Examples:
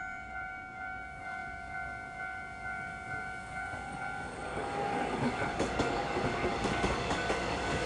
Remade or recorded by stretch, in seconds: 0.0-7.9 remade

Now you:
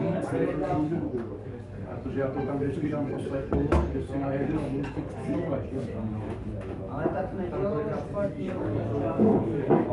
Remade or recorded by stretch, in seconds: 0.0-6.1 remade; 6.1-8.3 recorded; 8.3-9.9 remade

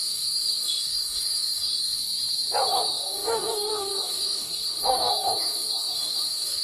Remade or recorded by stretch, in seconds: 0.0-2.0 remade; 2.0-2.7 recorded; 2.7-6.6 remade

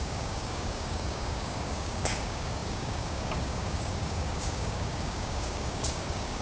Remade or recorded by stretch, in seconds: 0.0-6.4 remade

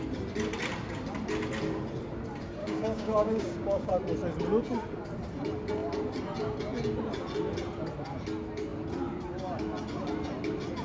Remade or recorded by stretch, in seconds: 0.0-2.6 recorded; 2.6-3.9 remade; 3.9-10.8 recorded

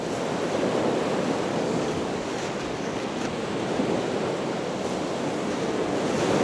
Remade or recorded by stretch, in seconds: 0.0-1.5 recorded; 1.5-3.1 remade; 3.1-6.4 recorded